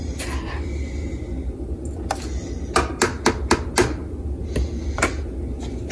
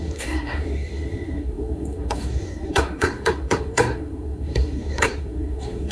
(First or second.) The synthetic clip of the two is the second